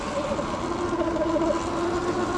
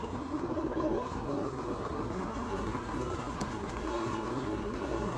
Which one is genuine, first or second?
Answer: first